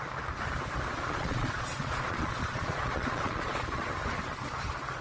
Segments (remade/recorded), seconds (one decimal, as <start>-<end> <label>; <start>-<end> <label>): 0.0-0.9 recorded; 0.9-3.9 remade; 3.9-5.0 recorded